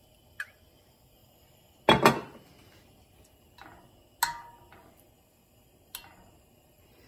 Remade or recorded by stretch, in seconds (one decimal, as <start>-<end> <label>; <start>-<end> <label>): 0.0-7.1 recorded

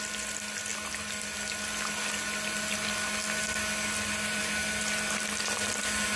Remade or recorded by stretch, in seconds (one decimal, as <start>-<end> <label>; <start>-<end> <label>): 0.0-6.2 recorded

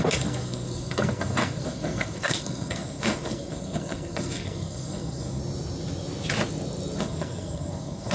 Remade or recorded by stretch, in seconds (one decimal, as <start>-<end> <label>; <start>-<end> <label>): 0.0-5.4 remade; 5.4-7.0 recorded; 7.0-8.1 remade

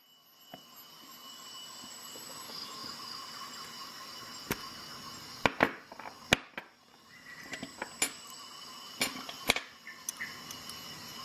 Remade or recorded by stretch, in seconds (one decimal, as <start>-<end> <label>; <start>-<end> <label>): 0.0-11.2 recorded

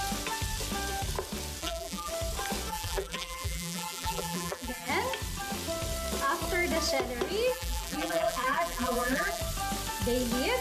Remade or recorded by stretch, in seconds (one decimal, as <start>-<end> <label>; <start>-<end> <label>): 0.0-1.6 recorded; 1.6-2.1 remade; 2.1-2.7 recorded; 2.7-4.9 remade; 4.9-7.5 recorded; 7.5-9.4 remade; 9.4-10.6 recorded

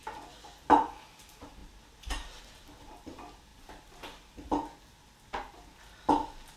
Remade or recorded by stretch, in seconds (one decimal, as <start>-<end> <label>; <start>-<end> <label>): 0.0-1.6 recorded; 1.6-2.4 remade; 2.4-6.6 recorded

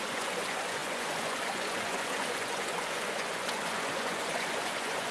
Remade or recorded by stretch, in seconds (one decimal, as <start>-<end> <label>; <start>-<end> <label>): 0.0-5.1 remade